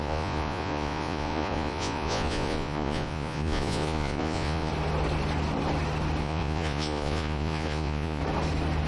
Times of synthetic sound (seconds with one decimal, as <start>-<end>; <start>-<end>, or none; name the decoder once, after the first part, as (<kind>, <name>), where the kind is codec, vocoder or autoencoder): 0.0-4.7 (vocoder, Vocos); 6.2-8.2